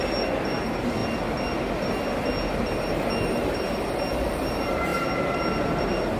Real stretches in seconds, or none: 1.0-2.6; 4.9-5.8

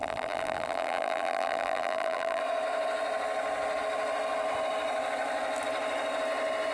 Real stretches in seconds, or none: 2.4-6.7

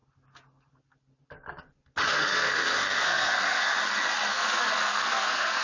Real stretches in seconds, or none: 0.0-2.1; 3.7-4.3

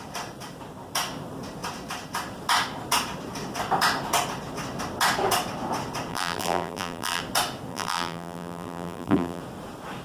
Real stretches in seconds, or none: 0.0-6.1; 7.2-7.7; 9.4-10.0